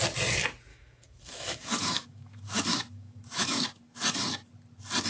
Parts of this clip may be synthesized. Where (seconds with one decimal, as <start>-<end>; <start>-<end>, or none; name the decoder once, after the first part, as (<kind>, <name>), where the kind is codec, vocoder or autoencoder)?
0.7-3.8 (autoencoder, DAC-VAE)